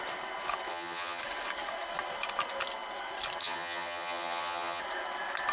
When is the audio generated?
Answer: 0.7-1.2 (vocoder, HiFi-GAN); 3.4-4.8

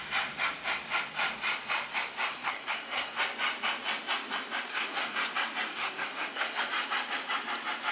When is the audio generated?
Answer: 2.3-3.2 (codec, SNAC); 4.7-5.2; 5.7-6.6

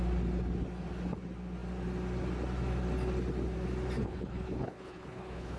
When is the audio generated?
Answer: 4.0-5.6 (codec, HILCodec)

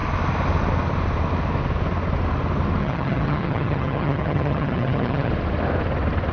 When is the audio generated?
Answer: 2.8-5.3 (vocoder, HiFi-GAN)

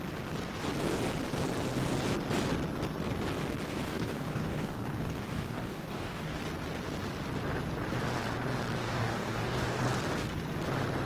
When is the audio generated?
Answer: 3.7-6.4 (codec, DAC); 8.8-9.8